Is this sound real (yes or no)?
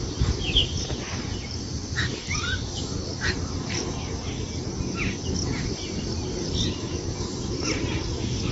yes